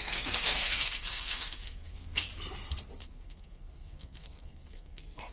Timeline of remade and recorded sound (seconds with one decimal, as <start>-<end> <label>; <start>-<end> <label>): 0.0-2.3 remade; 2.3-3.0 recorded; 3.0-5.3 remade